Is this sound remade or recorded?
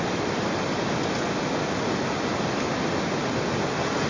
recorded